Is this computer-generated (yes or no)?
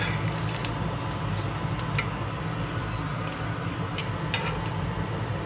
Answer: no